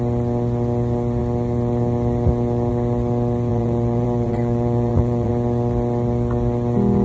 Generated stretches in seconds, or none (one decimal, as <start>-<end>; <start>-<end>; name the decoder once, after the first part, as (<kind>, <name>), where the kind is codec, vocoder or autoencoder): 3.5-5.3 (vocoder, Vocos)